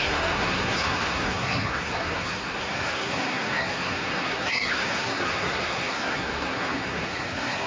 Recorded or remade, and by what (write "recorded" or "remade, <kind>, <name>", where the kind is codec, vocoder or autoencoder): remade, codec, SNAC